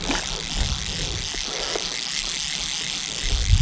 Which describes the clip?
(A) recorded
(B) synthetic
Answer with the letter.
A